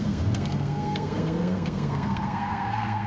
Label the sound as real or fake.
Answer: fake